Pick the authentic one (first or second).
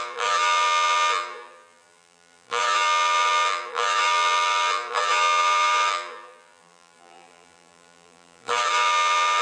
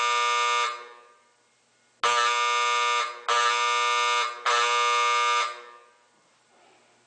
second